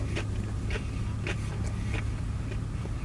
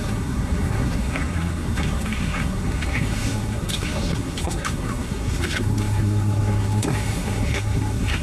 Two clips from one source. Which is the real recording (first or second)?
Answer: first